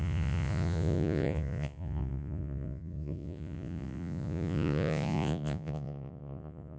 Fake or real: fake